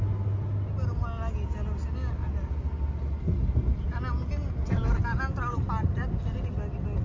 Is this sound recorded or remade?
recorded